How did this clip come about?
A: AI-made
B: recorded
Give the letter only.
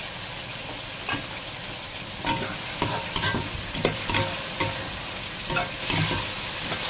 B